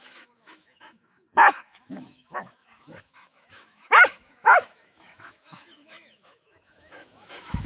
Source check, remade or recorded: remade